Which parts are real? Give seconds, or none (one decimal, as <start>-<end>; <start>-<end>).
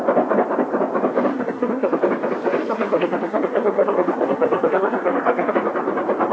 0.0-1.3; 2.0-2.6; 5.5-6.3